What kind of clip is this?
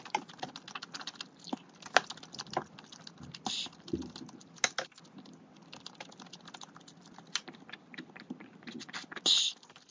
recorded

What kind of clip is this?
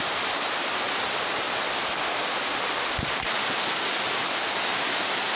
recorded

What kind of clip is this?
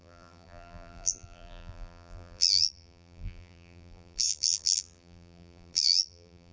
remade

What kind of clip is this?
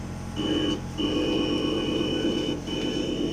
recorded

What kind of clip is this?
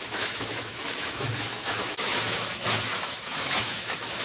remade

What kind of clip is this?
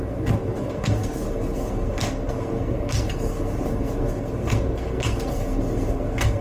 remade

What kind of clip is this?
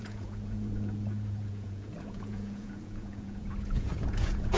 remade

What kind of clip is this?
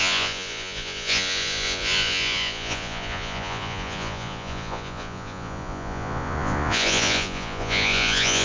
remade